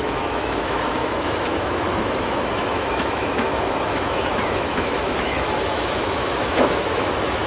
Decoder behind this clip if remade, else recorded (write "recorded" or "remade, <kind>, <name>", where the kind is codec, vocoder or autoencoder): remade, autoencoder, DAC-VAE